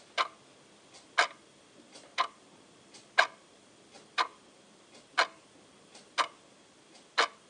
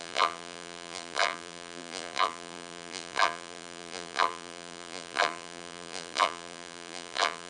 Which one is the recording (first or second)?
first